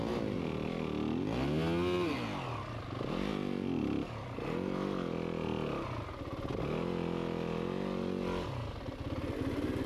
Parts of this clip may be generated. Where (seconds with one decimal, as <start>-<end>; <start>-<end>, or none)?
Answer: none